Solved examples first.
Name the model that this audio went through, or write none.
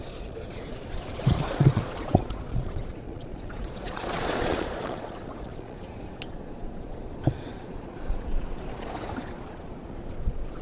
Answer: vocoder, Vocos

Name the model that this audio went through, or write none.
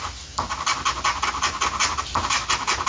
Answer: none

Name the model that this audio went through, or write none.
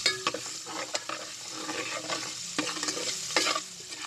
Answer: none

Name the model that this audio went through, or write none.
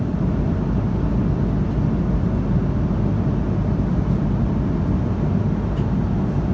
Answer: none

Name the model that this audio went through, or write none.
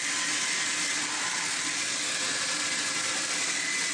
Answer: none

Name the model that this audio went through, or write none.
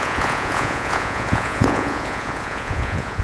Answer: vocoder, Vocos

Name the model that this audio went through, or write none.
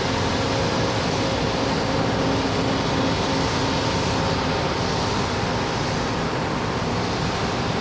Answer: none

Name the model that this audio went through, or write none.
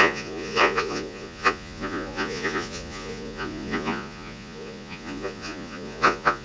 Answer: vocoder, Vocos